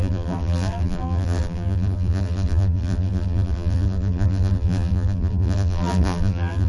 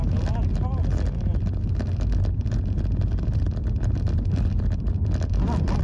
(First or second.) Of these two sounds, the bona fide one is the second